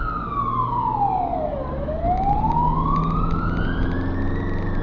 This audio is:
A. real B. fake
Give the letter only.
A